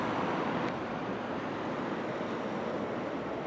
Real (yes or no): yes